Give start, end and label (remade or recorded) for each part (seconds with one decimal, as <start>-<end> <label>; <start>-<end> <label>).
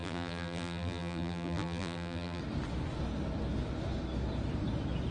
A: 0.0-2.4 remade; 2.4-5.1 recorded